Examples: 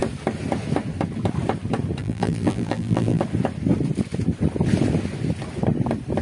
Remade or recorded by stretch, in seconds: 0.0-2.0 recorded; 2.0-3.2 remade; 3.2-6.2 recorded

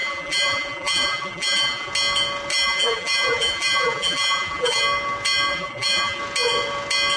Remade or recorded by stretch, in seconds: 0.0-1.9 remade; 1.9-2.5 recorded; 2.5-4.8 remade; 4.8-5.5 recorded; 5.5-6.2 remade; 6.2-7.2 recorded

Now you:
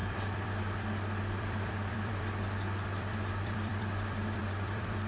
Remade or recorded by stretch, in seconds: 0.0-5.1 remade

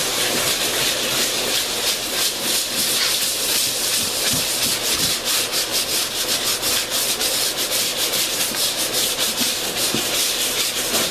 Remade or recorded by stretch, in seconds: 0.0-1.2 remade; 1.2-1.9 recorded; 1.9-3.9 remade; 3.9-4.7 recorded; 4.7-5.7 remade; 5.7-7.1 recorded; 7.1-11.1 remade

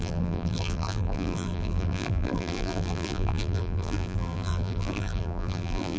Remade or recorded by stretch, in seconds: 0.0-6.0 remade

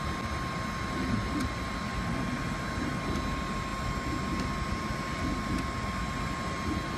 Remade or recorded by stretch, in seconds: 0.0-7.0 recorded

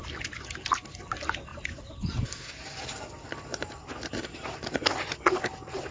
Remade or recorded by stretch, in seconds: 0.0-1.5 recorded; 1.5-2.8 remade; 2.8-3.5 recorded; 3.5-4.6 remade; 4.6-5.9 recorded